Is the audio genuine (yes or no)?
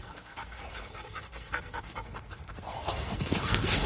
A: no